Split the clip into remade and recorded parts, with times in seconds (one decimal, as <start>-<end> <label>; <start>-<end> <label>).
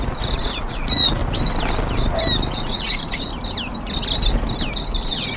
0.0-1.2 remade; 1.2-2.5 recorded; 2.5-3.3 remade; 3.3-5.0 recorded; 5.0-5.4 remade